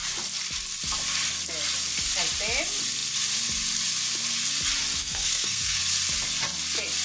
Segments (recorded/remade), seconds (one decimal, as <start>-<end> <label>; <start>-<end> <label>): 0.0-5.0 recorded; 5.0-5.8 remade; 5.8-7.0 recorded